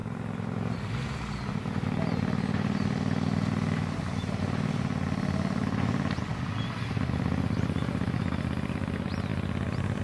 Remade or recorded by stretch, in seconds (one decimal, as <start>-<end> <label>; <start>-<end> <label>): 0.0-10.0 recorded